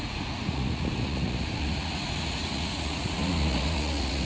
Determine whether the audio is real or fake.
fake